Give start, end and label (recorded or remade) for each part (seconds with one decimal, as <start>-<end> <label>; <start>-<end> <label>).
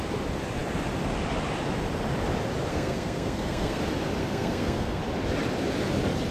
0.0-2.7 recorded; 2.7-3.8 remade; 3.8-4.2 recorded; 4.2-5.0 remade; 5.0-6.3 recorded